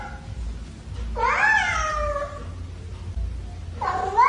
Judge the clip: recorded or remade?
recorded